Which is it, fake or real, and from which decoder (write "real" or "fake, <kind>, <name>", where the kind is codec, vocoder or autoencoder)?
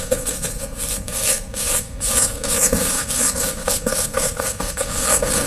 fake, codec, SNAC